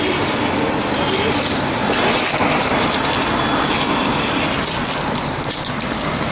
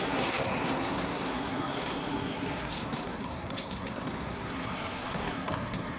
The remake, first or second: second